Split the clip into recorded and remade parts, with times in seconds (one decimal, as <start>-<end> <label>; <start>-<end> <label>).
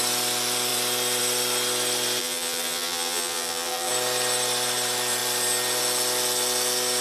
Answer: 0.0-2.2 recorded; 2.2-3.9 remade; 3.9-7.0 recorded